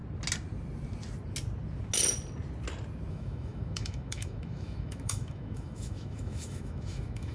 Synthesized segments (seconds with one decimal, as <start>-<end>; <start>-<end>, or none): 3.1-7.3